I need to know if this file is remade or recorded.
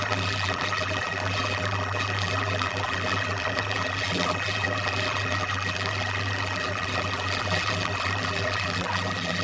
remade